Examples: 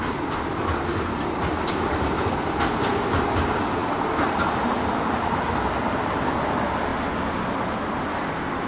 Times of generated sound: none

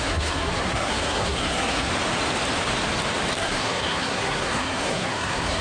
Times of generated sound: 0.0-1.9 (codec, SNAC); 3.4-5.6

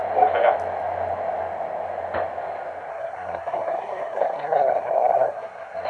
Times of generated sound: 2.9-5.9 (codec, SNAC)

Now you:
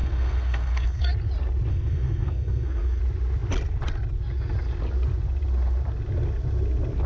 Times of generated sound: 0.0-1.1 (codec, SNAC); 1.7-3.0

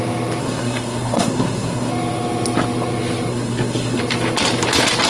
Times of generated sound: 0.4-1.9 (codec, SNAC); 3.3-4.0

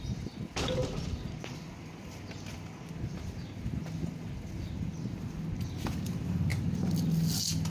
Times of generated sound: none